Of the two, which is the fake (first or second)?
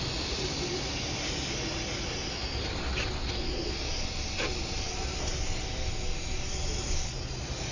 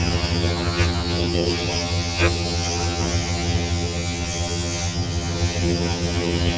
second